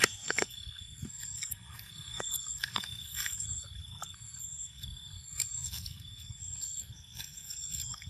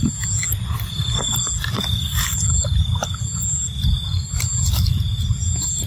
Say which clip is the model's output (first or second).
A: first